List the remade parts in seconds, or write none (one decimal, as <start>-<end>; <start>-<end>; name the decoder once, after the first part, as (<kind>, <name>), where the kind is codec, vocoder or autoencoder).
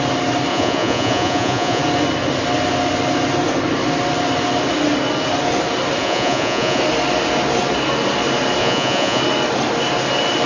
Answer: 0.5-1.8 (vocoder, Vocos); 6.0-6.8; 8.6-9.2